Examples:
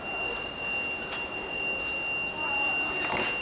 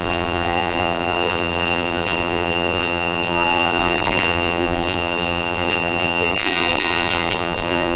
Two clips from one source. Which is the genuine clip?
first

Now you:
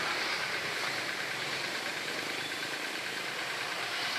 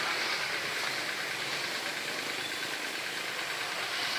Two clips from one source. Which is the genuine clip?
second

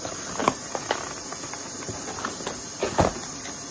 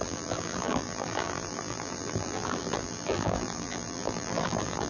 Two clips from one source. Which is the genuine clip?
first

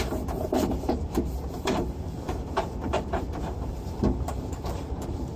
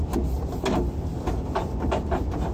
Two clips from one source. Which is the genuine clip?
second